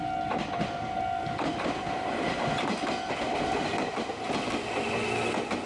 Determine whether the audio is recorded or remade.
recorded